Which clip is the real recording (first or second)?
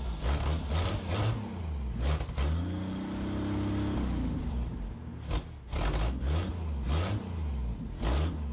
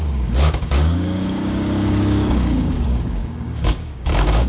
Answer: first